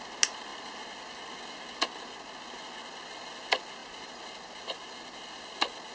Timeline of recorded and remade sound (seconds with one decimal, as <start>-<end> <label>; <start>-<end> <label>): 0.0-5.9 recorded